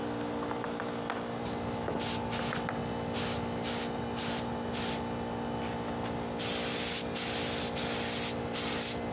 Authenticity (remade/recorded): recorded